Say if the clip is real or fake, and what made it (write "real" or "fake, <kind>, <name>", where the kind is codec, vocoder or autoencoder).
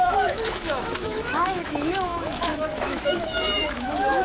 fake, autoencoder, DAC-VAE